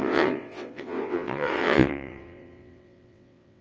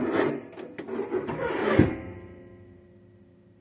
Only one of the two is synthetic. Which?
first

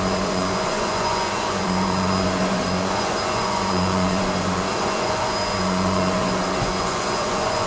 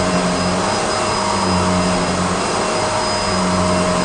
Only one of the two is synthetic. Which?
first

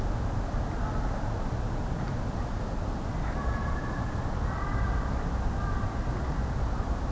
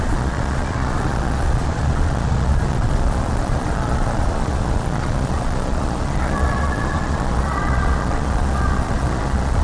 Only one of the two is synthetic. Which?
second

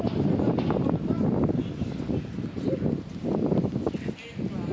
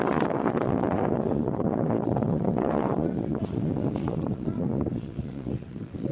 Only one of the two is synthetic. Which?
second